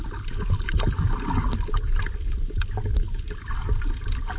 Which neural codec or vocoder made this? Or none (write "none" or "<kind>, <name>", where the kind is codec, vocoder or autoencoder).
none